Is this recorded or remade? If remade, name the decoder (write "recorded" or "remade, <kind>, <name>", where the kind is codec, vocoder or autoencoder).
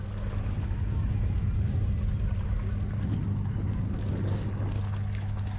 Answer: recorded